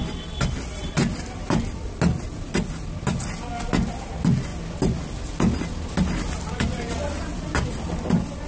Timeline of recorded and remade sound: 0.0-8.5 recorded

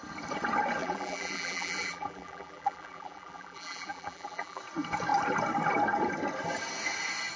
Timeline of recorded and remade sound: 0.0-0.8 recorded; 0.8-4.6 remade; 4.6-7.4 recorded

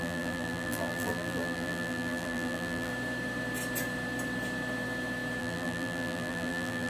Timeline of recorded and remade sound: 0.0-2.9 remade; 2.9-5.4 recorded; 5.4-6.9 remade

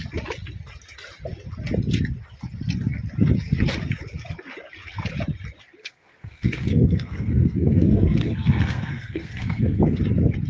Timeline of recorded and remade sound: 0.0-5.8 recorded; 5.8-10.0 remade; 10.0-10.5 recorded

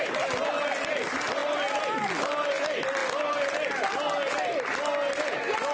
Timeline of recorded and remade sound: 0.0-5.7 recorded